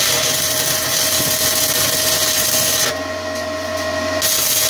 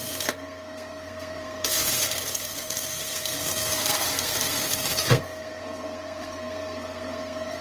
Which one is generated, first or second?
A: second